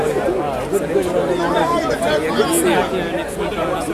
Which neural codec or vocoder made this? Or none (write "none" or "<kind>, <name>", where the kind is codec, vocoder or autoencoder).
none